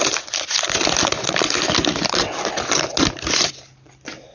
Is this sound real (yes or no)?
yes